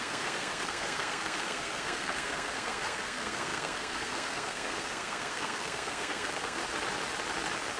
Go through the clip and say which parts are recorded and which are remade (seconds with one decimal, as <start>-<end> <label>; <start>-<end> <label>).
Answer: 0.0-6.6 remade; 6.6-7.8 recorded